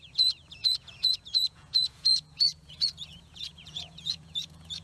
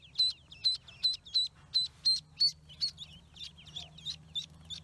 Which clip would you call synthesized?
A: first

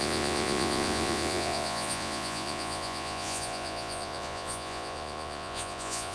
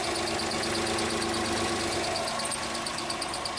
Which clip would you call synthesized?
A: first